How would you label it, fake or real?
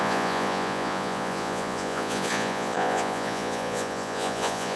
fake